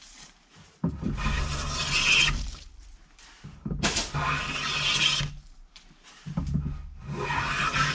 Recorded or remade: recorded